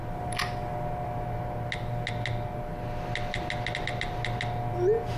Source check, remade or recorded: recorded